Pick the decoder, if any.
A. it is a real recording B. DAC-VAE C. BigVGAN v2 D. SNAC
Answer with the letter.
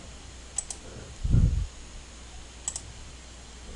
A